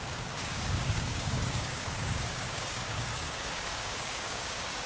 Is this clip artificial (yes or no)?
yes